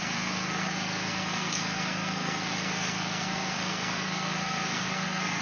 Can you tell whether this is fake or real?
fake